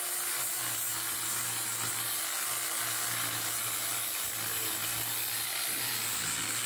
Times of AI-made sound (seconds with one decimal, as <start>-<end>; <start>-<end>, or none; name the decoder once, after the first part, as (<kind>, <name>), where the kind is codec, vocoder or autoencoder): none